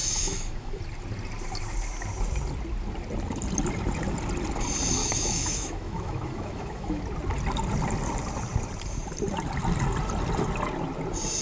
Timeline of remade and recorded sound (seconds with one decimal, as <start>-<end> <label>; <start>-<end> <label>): 0.0-0.8 remade; 0.8-5.0 recorded; 5.0-7.0 remade; 7.0-11.4 recorded

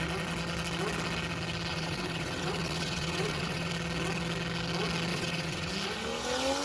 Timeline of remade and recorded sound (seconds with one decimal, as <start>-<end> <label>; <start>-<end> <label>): 0.0-1.7 recorded; 1.7-3.7 remade; 3.7-5.1 recorded; 5.1-5.7 remade; 5.7-6.6 recorded